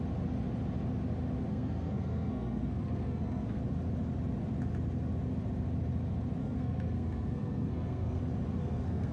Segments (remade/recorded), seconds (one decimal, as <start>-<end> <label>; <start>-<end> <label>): 0.0-1.5 recorded; 1.5-3.6 remade; 3.6-6.4 recorded; 6.4-8.2 remade; 8.2-8.6 recorded; 8.6-9.1 remade